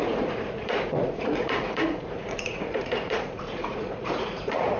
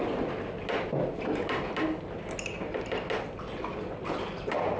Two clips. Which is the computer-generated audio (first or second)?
first